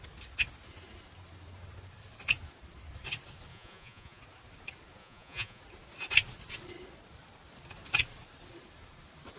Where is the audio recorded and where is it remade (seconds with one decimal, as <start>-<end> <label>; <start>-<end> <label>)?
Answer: 0.0-3.5 recorded; 3.5-4.2 remade; 4.2-5.0 recorded; 5.0-5.6 remade; 5.6-9.4 recorded